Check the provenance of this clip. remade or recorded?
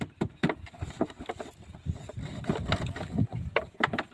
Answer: recorded